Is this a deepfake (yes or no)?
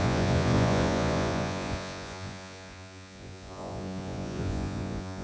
yes